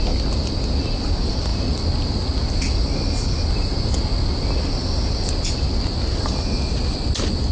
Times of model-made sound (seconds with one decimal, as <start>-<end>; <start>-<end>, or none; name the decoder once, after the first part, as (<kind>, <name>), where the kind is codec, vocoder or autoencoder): none